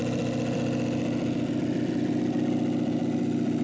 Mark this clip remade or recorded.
recorded